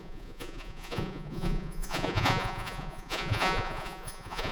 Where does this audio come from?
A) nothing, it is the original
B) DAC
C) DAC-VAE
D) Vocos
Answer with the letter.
D